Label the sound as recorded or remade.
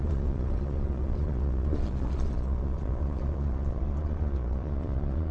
remade